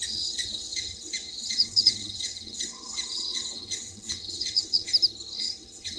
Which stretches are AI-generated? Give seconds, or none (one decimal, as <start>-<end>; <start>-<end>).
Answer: 0.0-4.9; 5.4-6.0